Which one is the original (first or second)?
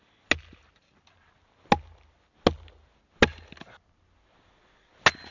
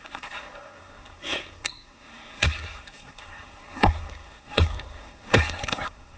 first